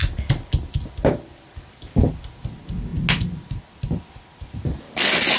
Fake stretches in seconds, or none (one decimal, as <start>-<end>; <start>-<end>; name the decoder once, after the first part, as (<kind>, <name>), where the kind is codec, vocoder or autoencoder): none